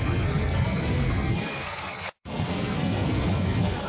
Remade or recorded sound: remade